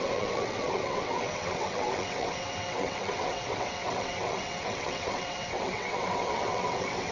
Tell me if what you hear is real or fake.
fake